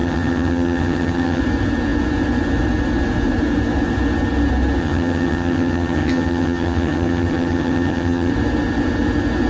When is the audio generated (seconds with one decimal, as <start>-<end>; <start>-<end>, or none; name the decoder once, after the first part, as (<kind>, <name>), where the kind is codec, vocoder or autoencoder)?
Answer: 0.0-1.4 (vocoder, HiFi-GAN); 4.8-8.3